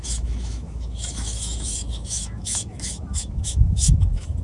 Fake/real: fake